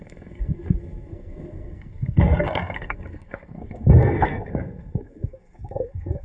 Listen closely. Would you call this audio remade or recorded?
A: remade